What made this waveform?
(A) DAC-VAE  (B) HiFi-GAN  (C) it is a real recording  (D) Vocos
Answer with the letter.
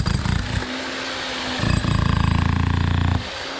C